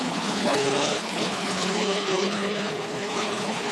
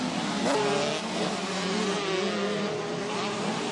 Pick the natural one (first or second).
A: second